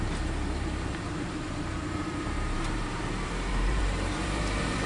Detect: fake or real fake